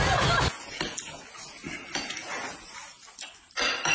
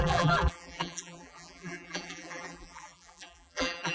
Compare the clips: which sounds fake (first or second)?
second